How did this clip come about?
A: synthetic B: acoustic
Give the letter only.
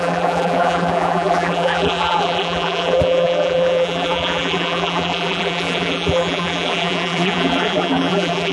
A